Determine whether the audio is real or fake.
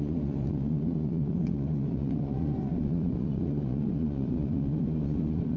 fake